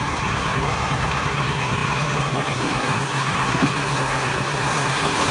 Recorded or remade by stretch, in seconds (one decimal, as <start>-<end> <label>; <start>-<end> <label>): 0.0-5.3 remade